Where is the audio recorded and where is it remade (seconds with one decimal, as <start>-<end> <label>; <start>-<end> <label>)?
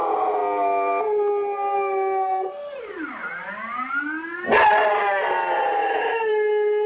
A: 0.0-5.8 recorded; 5.8-6.3 remade; 6.3-6.9 recorded